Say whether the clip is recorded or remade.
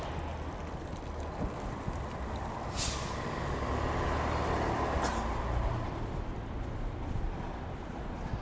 recorded